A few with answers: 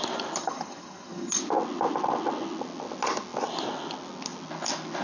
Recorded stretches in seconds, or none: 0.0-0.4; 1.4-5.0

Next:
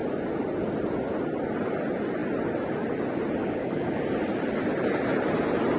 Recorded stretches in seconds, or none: 0.0-3.4; 4.0-5.8

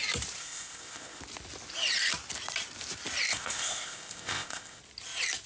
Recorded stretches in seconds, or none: 0.0-0.4; 1.2-3.3; 4.8-5.5

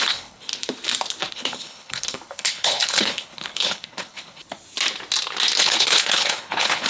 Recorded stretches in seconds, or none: 0.5-1.3; 4.4-5.6